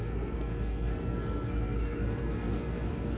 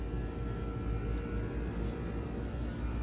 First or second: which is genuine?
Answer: second